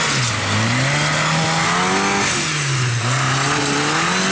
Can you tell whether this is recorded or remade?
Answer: recorded